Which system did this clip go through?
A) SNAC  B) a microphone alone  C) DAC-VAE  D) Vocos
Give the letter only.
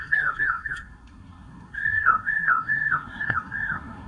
A